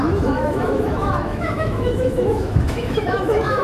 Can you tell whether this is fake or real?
fake